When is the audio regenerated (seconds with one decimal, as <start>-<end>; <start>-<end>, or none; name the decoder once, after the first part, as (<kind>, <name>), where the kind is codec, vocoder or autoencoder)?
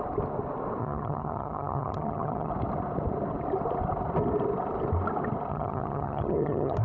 0.8-2.5 (vocoder, HiFi-GAN); 5.5-6.8